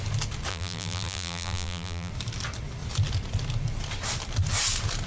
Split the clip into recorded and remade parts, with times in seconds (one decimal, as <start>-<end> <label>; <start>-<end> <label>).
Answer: 0.0-0.5 recorded; 0.5-2.1 remade; 2.1-5.1 recorded